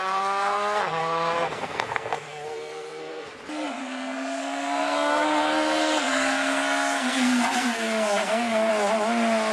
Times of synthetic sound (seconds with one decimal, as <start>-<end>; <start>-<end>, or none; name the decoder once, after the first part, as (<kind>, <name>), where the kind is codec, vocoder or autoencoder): 0.0-3.3 (codec, SNAC); 3.8-8.7